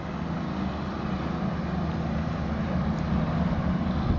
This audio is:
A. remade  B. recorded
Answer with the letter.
B